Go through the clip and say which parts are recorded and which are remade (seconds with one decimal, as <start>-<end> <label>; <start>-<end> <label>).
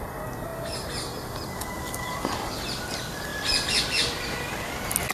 0.0-5.1 recorded